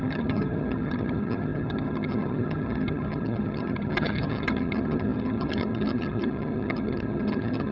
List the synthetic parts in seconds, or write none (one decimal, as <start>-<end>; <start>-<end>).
0.0-7.7